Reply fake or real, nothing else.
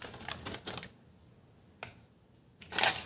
real